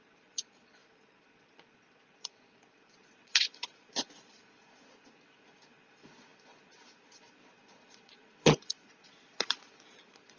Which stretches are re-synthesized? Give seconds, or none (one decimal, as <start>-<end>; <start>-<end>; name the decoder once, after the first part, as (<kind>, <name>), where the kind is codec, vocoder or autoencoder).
0.0-10.4 (vocoder, Vocos)